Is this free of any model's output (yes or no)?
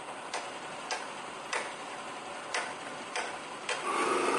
yes